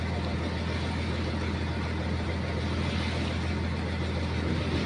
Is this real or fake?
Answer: real